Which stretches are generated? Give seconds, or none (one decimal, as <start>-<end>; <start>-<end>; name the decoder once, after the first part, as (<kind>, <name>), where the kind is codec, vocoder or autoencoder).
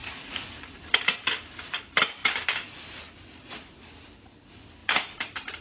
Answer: 0.0-1.0 (vocoder, BigVGAN v2); 2.2-3.8; 4.8-5.6